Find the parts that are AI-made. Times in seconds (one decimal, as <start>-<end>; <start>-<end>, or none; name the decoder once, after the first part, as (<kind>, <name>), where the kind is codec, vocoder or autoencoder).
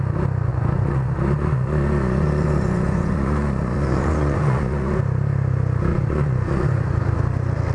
0.5-5.0 (vocoder, Vocos); 5.9-6.9